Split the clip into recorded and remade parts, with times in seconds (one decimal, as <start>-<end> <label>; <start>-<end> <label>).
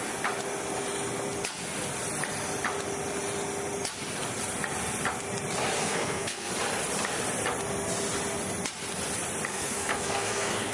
0.0-5.8 recorded; 5.8-6.5 remade; 6.5-9.5 recorded; 9.5-10.7 remade